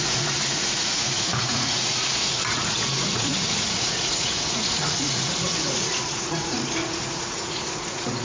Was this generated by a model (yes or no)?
yes